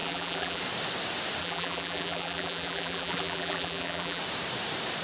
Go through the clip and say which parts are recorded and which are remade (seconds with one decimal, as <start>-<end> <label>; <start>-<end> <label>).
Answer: 0.0-0.6 remade; 0.6-1.4 recorded; 1.4-4.2 remade; 4.2-5.0 recorded